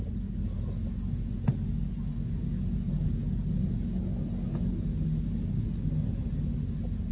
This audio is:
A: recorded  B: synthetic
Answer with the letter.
A